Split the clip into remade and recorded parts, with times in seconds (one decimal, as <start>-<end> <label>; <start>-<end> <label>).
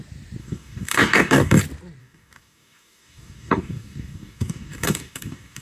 0.0-0.4 recorded; 0.4-1.6 remade; 1.6-2.0 recorded; 2.0-5.6 remade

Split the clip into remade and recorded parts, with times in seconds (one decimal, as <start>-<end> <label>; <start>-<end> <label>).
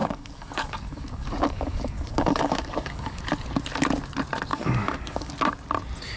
0.0-3.2 remade; 3.2-4.5 recorded; 4.5-5.3 remade; 5.3-6.2 recorded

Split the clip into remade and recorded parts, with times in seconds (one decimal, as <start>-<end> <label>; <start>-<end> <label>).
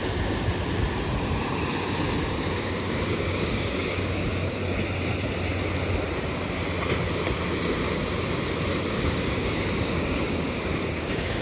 0.0-2.5 recorded; 2.5-4.6 remade; 4.6-8.9 recorded; 8.9-11.4 remade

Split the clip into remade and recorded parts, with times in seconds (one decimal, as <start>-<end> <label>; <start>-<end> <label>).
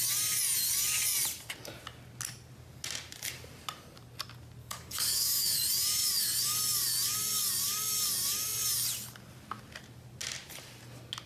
0.0-4.6 recorded; 4.6-5.6 remade; 5.6-11.3 recorded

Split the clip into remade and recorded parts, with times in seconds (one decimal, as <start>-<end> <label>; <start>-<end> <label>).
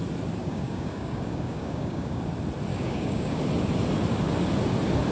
0.0-0.4 recorded; 0.4-2.2 remade; 2.2-2.7 recorded; 2.7-3.4 remade; 3.4-5.1 recorded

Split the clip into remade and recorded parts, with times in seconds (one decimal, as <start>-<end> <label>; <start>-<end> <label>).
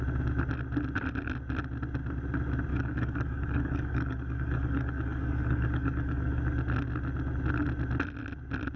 0.0-2.7 recorded; 2.7-6.4 remade; 6.4-8.8 recorded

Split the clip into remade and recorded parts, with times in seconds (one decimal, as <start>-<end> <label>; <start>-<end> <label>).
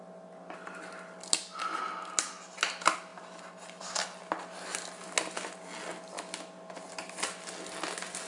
0.0-8.3 recorded